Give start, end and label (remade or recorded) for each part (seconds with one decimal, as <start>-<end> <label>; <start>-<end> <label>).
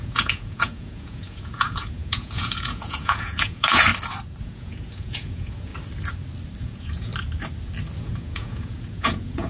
0.0-3.9 remade; 3.9-4.4 recorded; 4.4-5.7 remade; 5.7-6.6 recorded; 6.6-7.1 remade; 7.1-8.0 recorded; 8.0-9.5 remade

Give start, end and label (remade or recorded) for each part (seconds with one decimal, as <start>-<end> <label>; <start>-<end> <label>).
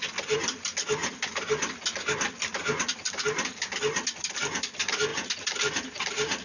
0.0-6.4 recorded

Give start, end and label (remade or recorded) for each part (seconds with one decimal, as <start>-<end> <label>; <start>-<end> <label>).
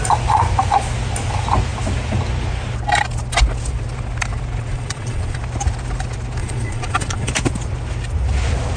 0.0-4.7 recorded; 4.7-5.4 remade; 5.4-6.4 recorded; 6.4-7.3 remade; 7.3-8.8 recorded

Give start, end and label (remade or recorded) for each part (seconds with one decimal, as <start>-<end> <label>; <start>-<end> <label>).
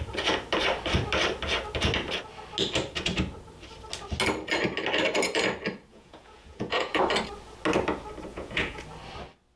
0.0-5.9 recorded; 5.9-7.0 remade; 7.0-8.3 recorded; 8.3-8.8 remade; 8.8-9.6 recorded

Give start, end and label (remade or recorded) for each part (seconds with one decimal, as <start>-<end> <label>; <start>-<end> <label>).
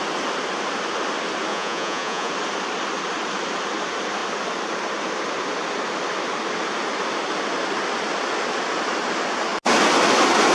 0.0-1.5 recorded; 1.5-2.3 remade; 2.3-10.5 recorded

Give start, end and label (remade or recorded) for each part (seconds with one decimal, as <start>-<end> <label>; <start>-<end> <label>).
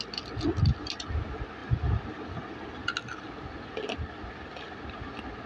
0.0-5.5 recorded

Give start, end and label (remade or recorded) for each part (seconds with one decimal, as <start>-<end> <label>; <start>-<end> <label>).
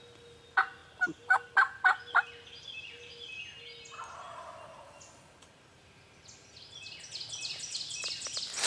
0.0-8.7 recorded